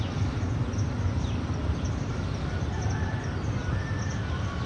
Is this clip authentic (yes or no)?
yes